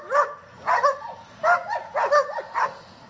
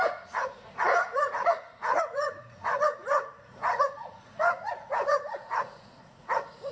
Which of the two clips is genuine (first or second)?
first